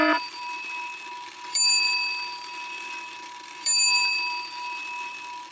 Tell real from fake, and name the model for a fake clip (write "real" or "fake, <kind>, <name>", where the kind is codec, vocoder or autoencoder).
fake, vocoder, BigVGAN v2